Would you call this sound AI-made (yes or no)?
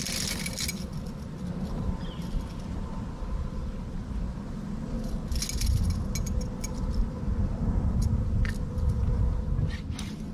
no